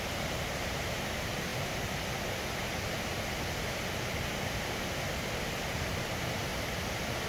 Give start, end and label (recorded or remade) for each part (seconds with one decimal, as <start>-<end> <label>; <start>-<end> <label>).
0.0-1.5 remade; 1.5-5.5 recorded; 5.5-6.5 remade; 6.5-7.3 recorded